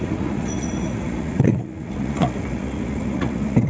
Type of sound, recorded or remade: remade